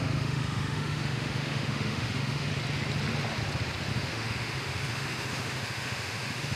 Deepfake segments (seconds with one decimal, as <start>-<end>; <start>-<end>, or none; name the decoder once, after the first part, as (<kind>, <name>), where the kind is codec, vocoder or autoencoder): 0.0-2.5 (autoencoder, DAC-VAE); 3.9-6.6